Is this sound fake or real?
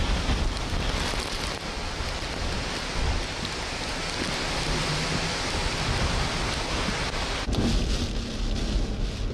real